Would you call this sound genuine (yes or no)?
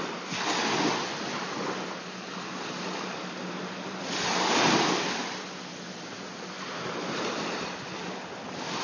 yes